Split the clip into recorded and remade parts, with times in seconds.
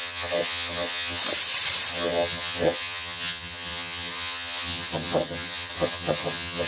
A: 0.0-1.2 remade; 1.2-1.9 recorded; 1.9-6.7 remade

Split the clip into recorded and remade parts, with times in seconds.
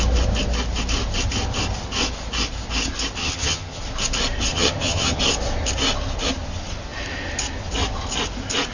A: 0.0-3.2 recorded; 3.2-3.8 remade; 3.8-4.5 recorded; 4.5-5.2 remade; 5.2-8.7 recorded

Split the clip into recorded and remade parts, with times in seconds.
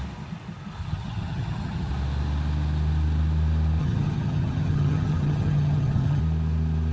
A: 0.0-0.8 recorded; 0.8-1.9 remade; 1.9-3.8 recorded; 3.8-6.2 remade; 6.2-6.9 recorded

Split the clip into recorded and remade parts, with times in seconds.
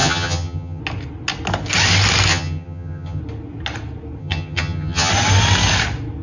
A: 0.0-0.8 remade; 0.8-2.3 recorded; 2.3-3.2 remade; 3.2-4.2 recorded; 4.2-5.1 remade; 5.1-6.2 recorded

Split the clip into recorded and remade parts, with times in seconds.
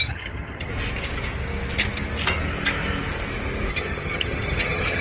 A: 0.0-0.7 remade; 0.7-3.7 recorded; 3.7-5.0 remade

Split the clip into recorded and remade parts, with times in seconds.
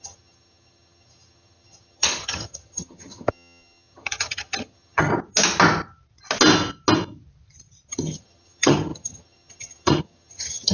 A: 0.0-5.1 remade; 5.1-7.9 recorded; 7.9-10.7 remade